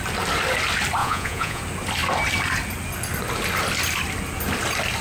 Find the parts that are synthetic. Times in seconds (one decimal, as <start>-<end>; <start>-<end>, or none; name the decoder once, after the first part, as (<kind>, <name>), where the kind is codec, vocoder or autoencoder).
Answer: 1.0-1.6 (vocoder, Vocos)